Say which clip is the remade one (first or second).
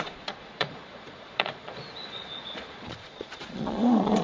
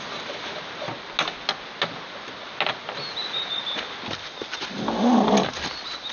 first